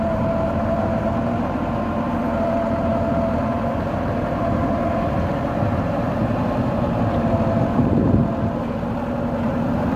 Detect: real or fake fake